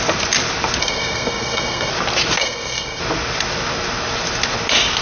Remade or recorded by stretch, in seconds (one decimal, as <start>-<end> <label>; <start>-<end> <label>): 0.0-0.8 recorded; 0.8-1.9 remade; 1.9-2.4 recorded; 2.4-3.0 remade; 3.0-5.0 recorded